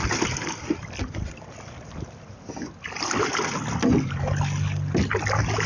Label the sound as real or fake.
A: real